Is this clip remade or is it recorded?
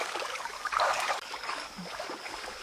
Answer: remade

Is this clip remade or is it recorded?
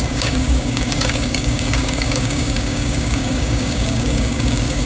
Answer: remade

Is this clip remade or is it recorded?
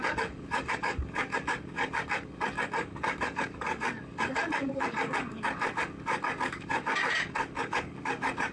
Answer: remade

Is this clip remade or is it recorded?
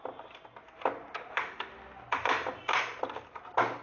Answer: recorded